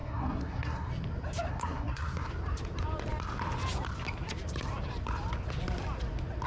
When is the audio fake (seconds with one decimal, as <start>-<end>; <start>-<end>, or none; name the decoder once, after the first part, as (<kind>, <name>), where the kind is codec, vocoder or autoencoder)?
0.0-0.9 (codec, SNAC); 1.5-2.3